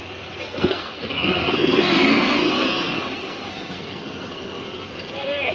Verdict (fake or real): fake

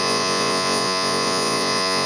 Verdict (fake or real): fake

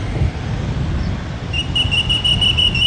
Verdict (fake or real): real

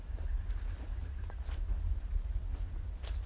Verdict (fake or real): real